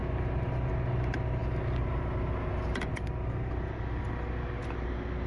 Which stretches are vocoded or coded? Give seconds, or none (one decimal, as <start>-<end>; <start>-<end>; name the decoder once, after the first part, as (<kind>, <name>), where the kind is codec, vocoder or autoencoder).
none